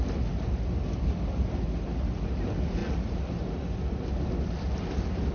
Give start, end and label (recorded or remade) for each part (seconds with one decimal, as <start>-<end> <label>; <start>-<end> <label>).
0.0-5.3 recorded